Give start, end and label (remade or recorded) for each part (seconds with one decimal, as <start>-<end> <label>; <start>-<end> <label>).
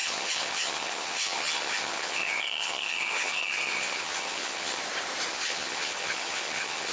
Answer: 0.0-4.8 remade; 4.8-5.3 recorded; 5.3-6.9 remade